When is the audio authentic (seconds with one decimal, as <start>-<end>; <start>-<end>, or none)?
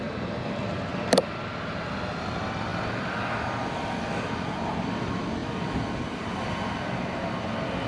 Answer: 0.0-0.9; 1.9-2.7; 3.3-7.9